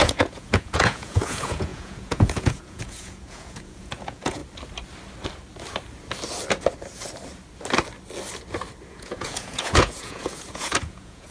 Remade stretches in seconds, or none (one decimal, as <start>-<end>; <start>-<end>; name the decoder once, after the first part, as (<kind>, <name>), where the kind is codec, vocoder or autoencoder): 0.0-4.4 (vocoder, Vocos); 8.9-11.3